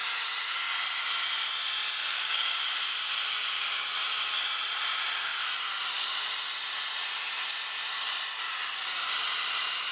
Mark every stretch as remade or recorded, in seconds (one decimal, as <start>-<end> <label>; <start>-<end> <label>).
0.0-2.1 recorded; 2.1-2.6 remade; 2.6-9.9 recorded